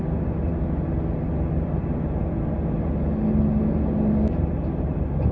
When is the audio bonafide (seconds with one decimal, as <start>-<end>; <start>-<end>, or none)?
0.0-5.3